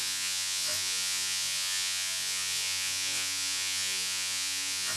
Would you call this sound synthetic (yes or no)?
yes